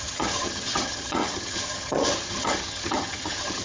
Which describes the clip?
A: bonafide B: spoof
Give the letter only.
B